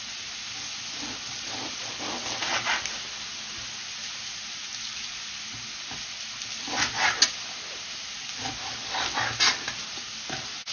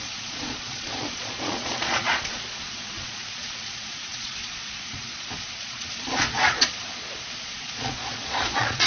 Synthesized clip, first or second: second